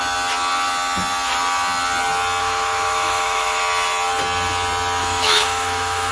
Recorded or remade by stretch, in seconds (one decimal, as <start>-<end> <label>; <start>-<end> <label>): 0.0-2.4 recorded; 2.4-3.6 remade; 3.6-5.0 recorded; 5.0-6.1 remade